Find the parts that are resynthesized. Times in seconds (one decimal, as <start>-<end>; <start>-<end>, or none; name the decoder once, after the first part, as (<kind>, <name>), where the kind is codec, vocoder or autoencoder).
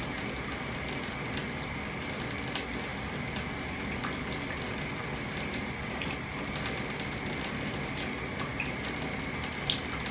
none